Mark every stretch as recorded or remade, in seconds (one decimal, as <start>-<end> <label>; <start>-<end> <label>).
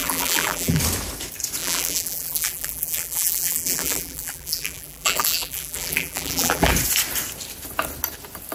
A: 0.0-0.8 remade; 0.8-1.6 recorded; 1.6-6.7 remade; 6.7-8.5 recorded